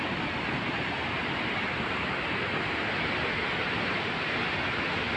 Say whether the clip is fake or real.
real